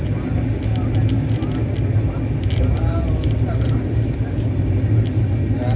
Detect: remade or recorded recorded